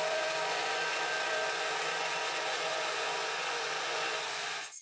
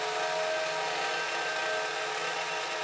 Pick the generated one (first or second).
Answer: first